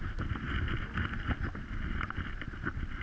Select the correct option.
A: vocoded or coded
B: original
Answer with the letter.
B